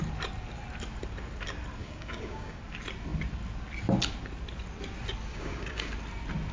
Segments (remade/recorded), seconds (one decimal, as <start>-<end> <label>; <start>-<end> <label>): 0.0-1.8 recorded; 1.8-2.6 remade; 2.6-5.3 recorded; 5.3-5.9 remade; 5.9-6.5 recorded